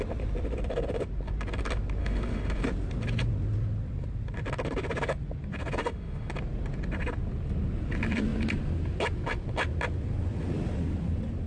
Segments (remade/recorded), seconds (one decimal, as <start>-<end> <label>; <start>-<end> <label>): 0.0-2.0 recorded; 2.0-2.6 remade; 2.6-5.8 recorded; 5.8-6.3 remade; 6.3-11.5 recorded

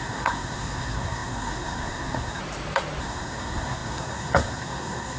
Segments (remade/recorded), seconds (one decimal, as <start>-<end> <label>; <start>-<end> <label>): 0.0-2.4 remade; 2.4-3.0 recorded; 3.0-5.2 remade

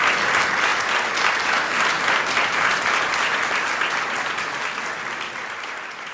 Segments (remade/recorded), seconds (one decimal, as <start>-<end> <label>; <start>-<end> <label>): 0.0-6.1 recorded

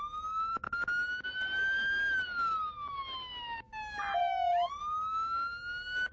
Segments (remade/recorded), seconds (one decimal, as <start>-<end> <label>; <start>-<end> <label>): 0.0-4.2 recorded; 4.2-4.7 remade; 4.7-6.1 recorded

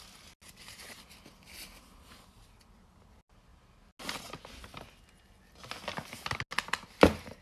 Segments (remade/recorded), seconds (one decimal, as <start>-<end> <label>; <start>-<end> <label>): 0.0-7.4 recorded

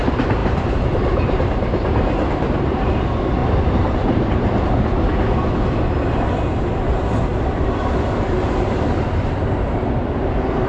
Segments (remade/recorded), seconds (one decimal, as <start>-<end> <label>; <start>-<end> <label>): 0.0-0.4 recorded; 0.4-3.0 remade; 3.0-3.4 recorded; 3.4-4.7 remade; 4.7-10.7 recorded

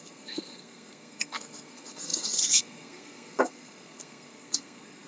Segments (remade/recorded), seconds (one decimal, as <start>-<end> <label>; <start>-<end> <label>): 0.0-5.1 remade

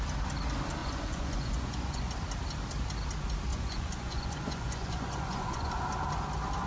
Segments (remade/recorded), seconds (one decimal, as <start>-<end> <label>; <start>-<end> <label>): 0.0-0.8 recorded; 0.8-2.1 remade; 2.1-3.5 recorded; 3.5-5.7 remade; 5.7-6.7 recorded